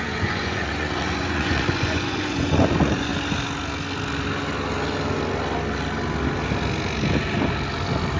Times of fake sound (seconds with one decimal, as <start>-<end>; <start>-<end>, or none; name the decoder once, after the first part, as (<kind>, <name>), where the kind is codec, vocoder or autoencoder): 0.0-3.1 (vocoder, Vocos)